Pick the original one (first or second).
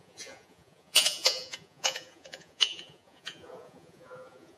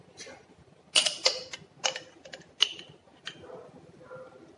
second